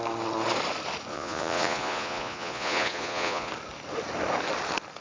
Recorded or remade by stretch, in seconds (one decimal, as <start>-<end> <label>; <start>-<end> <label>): 0.0-1.1 recorded; 1.1-3.5 remade; 3.5-5.0 recorded